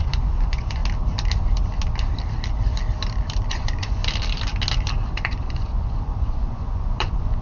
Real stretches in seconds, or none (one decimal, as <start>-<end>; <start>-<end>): 0.8-3.5; 4.0-5.0